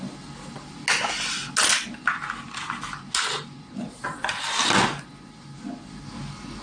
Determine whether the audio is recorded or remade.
recorded